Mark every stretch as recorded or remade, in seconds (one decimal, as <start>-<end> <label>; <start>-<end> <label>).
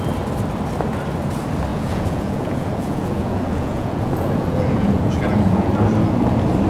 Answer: 0.0-1.7 recorded; 1.7-5.7 remade; 5.7-6.7 recorded